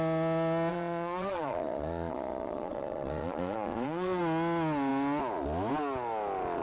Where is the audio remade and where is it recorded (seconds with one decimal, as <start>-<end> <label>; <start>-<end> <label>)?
0.0-0.7 recorded; 0.7-4.2 remade; 4.2-6.6 recorded